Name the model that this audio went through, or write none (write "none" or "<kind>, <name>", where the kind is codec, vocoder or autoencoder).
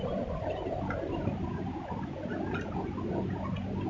none